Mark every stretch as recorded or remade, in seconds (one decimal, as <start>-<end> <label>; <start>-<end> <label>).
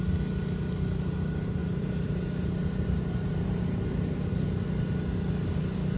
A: 0.0-1.6 recorded; 1.6-4.3 remade; 4.3-6.0 recorded